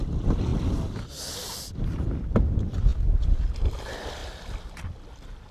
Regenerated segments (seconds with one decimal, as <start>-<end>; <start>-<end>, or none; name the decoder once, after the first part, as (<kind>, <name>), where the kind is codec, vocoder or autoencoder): none